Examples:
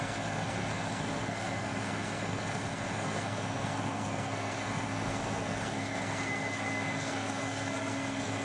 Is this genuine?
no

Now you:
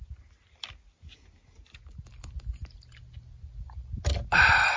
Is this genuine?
yes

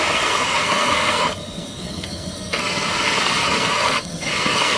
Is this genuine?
no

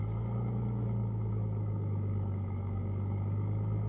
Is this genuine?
no